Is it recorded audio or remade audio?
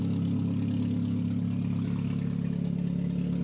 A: recorded